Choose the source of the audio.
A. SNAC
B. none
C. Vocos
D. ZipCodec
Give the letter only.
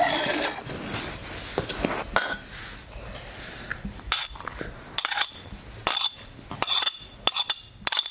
B